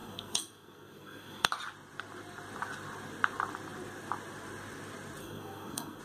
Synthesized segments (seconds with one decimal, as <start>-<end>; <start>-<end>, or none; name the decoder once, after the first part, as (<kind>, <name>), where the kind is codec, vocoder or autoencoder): 0.0-1.5 (codec, SNAC); 5.2-6.0